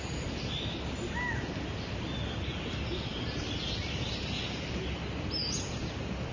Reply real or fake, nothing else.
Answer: real